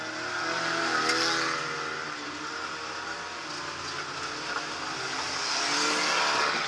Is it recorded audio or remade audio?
recorded